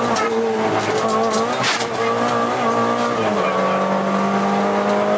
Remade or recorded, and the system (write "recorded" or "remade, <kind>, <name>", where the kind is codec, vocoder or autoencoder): recorded